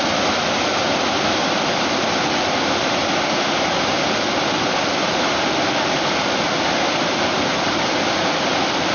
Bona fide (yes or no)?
yes